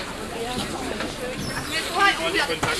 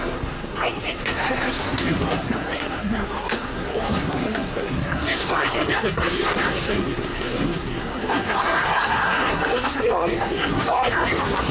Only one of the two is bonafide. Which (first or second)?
first